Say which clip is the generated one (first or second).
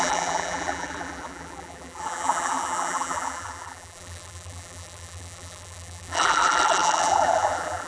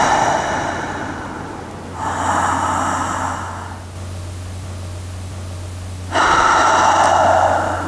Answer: first